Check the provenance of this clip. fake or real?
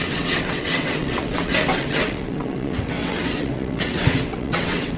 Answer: fake